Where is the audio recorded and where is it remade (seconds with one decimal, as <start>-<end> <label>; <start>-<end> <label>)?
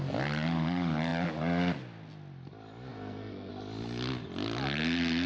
0.0-2.9 recorded; 2.9-3.5 remade; 3.5-5.3 recorded